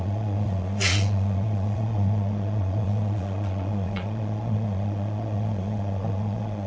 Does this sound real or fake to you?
fake